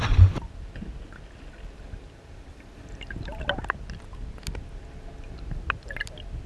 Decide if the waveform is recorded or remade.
recorded